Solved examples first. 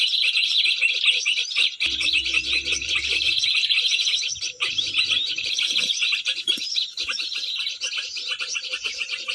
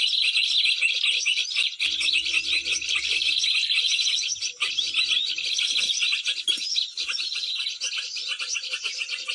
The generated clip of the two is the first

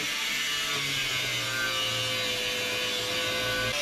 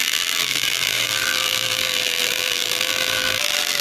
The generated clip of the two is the second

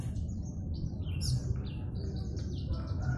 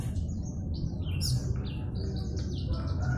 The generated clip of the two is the first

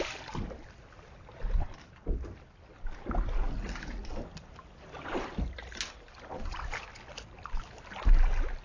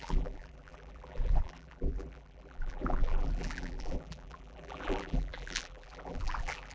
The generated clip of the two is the second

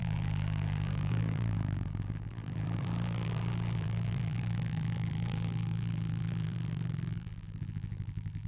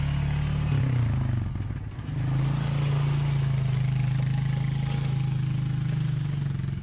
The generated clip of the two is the first